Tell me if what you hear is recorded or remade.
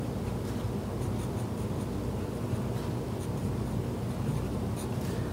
recorded